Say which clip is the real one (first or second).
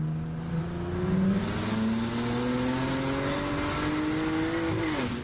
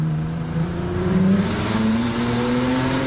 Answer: first